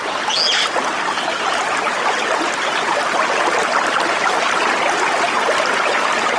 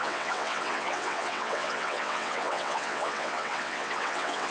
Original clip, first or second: first